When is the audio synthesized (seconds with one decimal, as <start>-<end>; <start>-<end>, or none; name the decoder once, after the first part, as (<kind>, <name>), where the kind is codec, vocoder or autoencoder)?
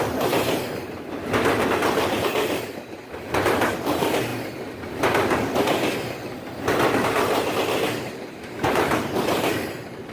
0.0-4.3 (vocoder, BigVGAN v2); 8.0-10.1